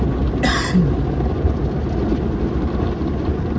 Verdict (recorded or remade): recorded